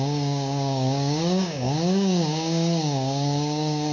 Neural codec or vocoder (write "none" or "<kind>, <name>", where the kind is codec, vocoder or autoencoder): codec, DAC